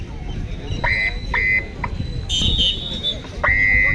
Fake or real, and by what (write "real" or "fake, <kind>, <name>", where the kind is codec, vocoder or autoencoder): real